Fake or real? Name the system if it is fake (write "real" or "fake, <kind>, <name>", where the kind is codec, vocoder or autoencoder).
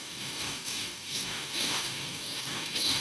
fake, codec, DAC